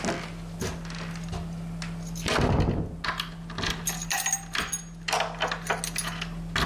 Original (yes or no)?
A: yes